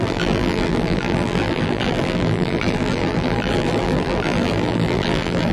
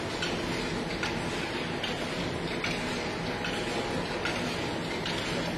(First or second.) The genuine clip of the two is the second